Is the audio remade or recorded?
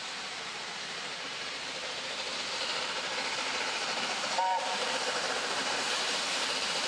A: remade